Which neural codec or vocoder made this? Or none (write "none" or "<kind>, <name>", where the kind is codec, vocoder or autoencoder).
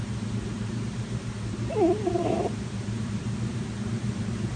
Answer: vocoder, BigVGAN v2